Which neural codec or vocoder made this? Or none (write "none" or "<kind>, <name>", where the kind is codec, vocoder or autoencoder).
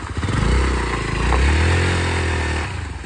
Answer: none